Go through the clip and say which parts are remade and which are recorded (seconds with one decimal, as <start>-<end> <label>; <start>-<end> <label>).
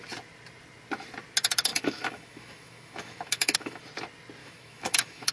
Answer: 0.0-1.7 recorded; 1.7-3.8 remade; 3.8-4.4 recorded; 4.4-5.3 remade